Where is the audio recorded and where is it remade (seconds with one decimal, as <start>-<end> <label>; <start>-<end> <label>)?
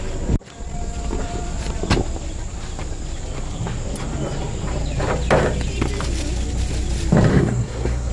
0.0-7.3 recorded; 7.3-8.1 remade